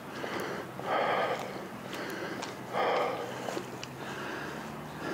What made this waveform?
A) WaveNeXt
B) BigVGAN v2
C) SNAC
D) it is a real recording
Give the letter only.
D